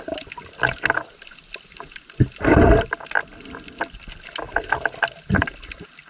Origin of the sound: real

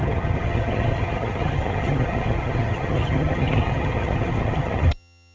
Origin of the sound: fake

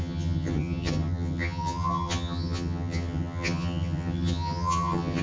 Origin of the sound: fake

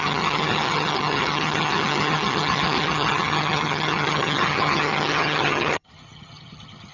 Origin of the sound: fake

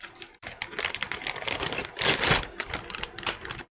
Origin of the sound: real